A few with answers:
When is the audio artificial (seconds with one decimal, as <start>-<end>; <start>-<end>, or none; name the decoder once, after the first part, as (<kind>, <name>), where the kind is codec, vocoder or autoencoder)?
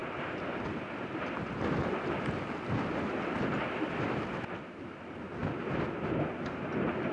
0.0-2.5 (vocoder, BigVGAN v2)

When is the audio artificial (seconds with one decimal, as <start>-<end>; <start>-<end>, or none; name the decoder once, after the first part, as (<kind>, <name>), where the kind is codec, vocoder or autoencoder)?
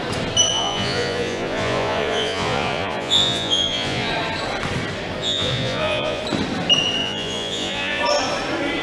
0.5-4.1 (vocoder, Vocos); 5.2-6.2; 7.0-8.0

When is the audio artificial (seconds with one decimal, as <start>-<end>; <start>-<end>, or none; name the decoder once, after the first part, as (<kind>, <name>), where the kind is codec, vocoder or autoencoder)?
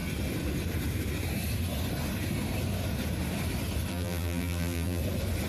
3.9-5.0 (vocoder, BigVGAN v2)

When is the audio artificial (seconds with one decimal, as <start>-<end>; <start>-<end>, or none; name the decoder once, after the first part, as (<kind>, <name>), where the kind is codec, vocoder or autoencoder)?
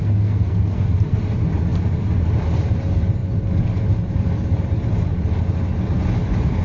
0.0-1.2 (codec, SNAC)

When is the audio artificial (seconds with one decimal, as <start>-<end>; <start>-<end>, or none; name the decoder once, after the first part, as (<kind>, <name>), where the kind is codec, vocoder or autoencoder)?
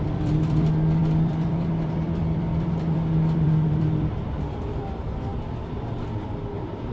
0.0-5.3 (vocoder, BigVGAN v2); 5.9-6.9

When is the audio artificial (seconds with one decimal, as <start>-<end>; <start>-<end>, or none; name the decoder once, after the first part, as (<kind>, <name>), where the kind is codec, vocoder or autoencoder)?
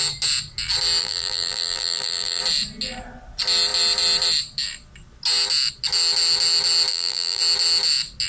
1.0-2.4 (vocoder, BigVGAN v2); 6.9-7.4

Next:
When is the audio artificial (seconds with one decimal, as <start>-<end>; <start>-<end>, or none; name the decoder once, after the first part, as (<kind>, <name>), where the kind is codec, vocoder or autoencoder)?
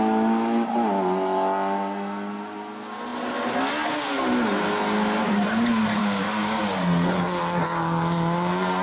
6.0-6.6 (codec, DAC)